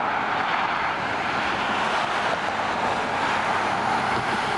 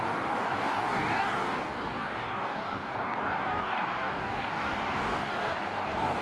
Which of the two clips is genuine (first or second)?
first